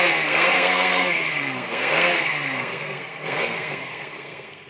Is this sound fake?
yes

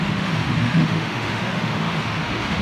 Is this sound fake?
yes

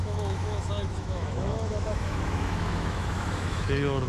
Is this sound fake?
yes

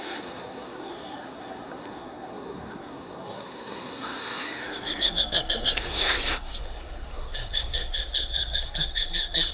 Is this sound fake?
yes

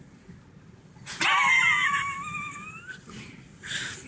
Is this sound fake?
no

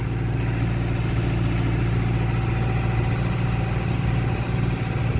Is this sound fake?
no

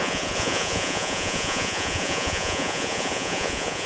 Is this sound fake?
yes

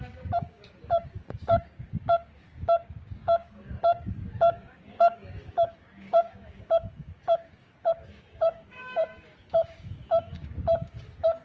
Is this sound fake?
yes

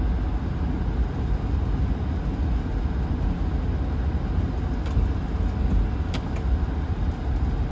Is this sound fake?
no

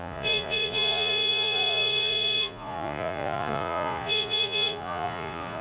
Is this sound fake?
yes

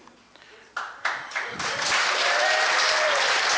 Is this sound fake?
yes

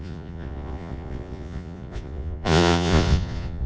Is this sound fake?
yes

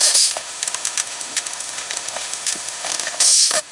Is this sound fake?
yes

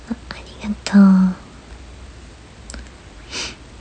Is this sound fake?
no